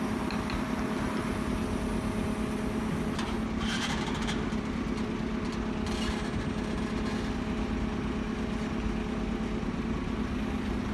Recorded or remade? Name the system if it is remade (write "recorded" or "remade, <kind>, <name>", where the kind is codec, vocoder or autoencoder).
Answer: recorded